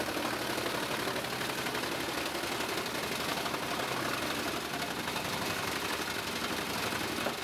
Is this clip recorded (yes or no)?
yes